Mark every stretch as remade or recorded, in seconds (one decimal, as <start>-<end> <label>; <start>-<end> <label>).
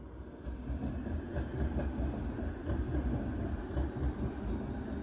0.0-5.0 recorded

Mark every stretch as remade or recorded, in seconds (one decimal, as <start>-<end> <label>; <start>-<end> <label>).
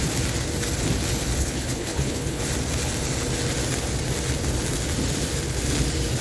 0.0-1.4 recorded; 1.4-2.4 remade; 2.4-6.2 recorded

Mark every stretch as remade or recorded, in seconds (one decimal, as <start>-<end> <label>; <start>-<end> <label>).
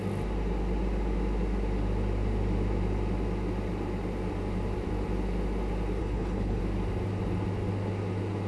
0.0-6.0 recorded; 6.0-6.6 remade; 6.6-8.5 recorded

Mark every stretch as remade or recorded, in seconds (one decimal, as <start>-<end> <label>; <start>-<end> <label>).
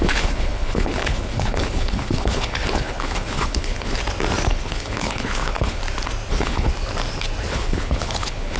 0.0-4.0 remade; 4.0-4.5 recorded; 4.5-5.8 remade; 5.8-6.3 recorded; 6.3-6.7 remade; 6.7-7.5 recorded; 7.5-8.6 remade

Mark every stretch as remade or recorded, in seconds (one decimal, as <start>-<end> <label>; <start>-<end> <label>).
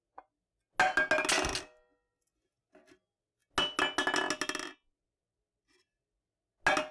0.0-6.9 recorded